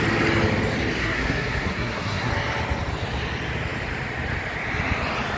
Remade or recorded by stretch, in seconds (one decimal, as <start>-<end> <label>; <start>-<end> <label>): 0.0-1.0 recorded; 1.0-2.3 remade; 2.3-5.4 recorded